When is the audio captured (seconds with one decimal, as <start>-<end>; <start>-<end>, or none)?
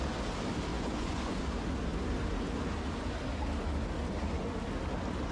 0.0-0.7; 1.4-5.3